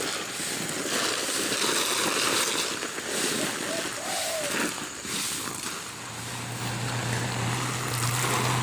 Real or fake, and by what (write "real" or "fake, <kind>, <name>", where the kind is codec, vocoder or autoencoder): real